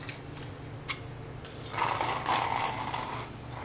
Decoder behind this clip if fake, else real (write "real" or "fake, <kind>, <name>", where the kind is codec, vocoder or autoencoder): real